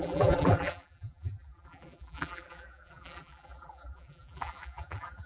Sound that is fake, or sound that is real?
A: fake